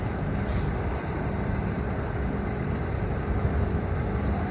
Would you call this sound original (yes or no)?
yes